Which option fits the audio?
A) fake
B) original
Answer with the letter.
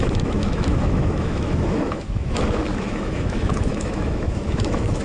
A